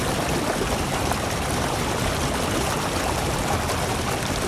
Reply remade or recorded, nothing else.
remade